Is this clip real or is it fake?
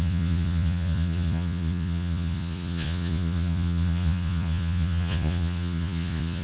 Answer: fake